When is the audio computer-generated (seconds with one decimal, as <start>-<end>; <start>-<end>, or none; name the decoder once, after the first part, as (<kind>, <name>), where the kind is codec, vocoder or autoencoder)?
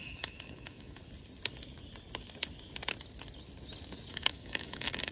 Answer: 0.0-1.0 (autoencoder, DAC-VAE); 4.1-5.1